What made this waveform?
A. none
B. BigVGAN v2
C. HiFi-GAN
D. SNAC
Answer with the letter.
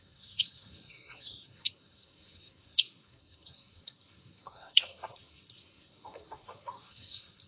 D